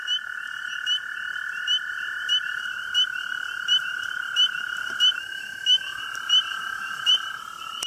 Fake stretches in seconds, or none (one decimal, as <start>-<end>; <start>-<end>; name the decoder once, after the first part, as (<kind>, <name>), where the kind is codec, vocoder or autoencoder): 5.1-6.0 (autoencoder, DAC-VAE); 6.5-7.1